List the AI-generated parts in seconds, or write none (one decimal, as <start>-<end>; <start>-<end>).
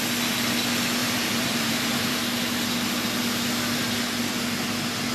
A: 1.0-2.2